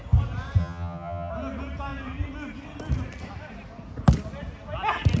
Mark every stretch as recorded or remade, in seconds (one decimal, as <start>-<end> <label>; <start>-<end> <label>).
0.0-0.6 recorded; 0.6-1.3 remade; 1.3-5.2 recorded